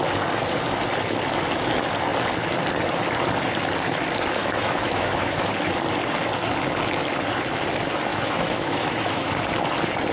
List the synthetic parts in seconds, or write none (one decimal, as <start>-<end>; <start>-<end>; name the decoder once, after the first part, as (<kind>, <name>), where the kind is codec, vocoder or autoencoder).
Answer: 4.4-5.5 (autoencoder, DAC-VAE); 8.1-9.3